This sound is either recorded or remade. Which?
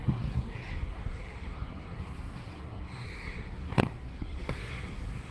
remade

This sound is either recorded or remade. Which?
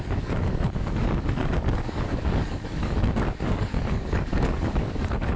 remade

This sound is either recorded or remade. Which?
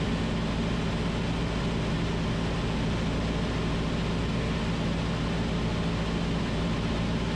recorded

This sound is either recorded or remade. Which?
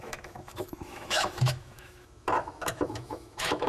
remade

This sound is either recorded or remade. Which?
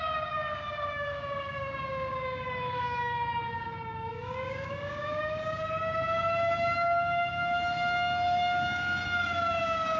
remade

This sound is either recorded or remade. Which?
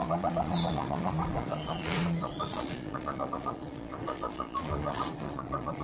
remade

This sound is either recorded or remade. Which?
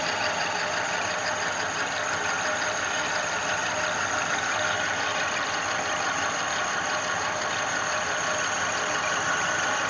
recorded